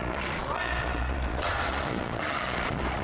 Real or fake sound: fake